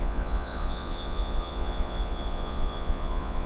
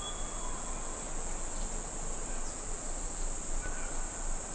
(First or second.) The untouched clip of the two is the second